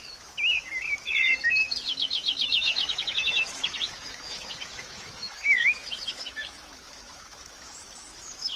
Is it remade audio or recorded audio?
remade